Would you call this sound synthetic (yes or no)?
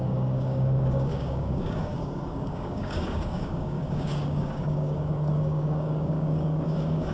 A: yes